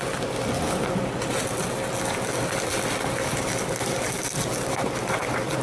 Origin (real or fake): real